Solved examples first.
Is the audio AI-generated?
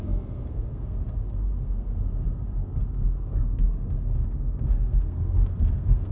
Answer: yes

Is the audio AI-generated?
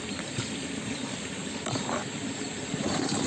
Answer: no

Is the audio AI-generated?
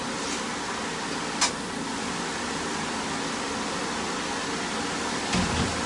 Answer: no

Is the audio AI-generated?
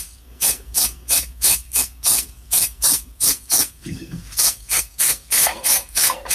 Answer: yes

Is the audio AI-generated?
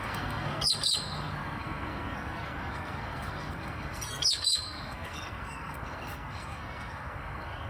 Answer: yes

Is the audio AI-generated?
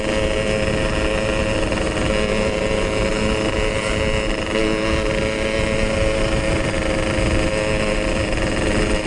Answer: no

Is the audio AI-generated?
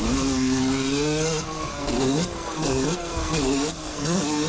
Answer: yes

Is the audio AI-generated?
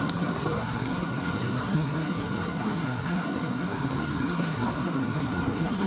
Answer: yes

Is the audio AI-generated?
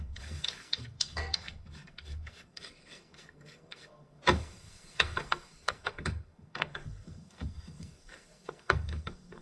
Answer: yes